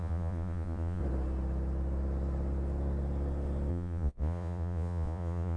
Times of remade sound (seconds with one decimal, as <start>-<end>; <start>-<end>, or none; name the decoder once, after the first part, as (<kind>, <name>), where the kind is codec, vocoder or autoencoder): 0.0-1.0 (vocoder, Vocos); 3.7-5.6